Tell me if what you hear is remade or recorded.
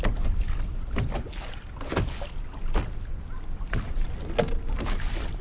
recorded